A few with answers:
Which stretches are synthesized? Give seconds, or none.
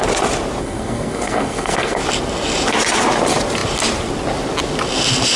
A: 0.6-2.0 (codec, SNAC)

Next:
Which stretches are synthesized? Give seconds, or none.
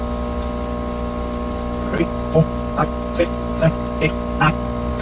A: none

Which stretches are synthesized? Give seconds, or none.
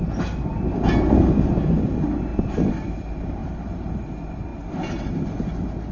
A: 3.4-4.1 (vocoder, BigVGAN v2)